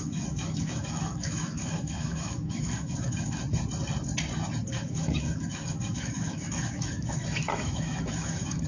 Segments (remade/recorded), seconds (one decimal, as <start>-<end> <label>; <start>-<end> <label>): 0.0-3.4 remade; 3.4-4.7 recorded; 4.7-8.7 remade